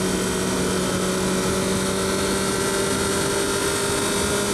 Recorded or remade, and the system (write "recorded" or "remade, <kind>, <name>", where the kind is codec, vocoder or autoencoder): recorded